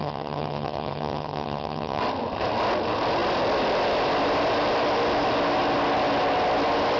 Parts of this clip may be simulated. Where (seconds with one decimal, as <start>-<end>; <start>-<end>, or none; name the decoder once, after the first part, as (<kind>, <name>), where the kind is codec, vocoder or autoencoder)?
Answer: 0.0-2.0 (vocoder, HiFi-GAN)